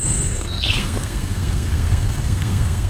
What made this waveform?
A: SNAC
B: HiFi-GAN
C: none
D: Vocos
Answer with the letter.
A